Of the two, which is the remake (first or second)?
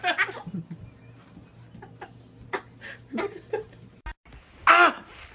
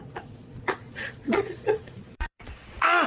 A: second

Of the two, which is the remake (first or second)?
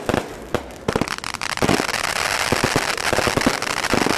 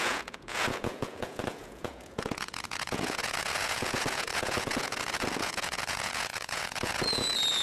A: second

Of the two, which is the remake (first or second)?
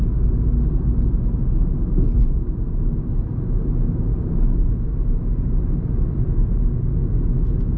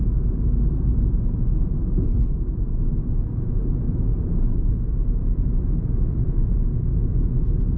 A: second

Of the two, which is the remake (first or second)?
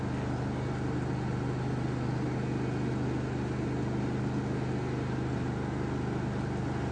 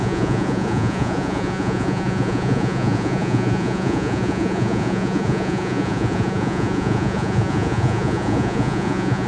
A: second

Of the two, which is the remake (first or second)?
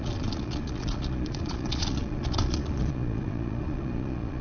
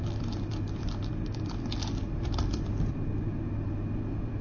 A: first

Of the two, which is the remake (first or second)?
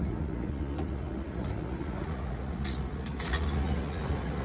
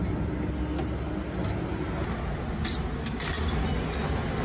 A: first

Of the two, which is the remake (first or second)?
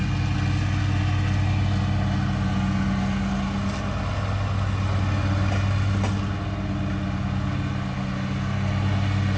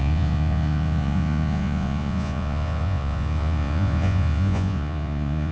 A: second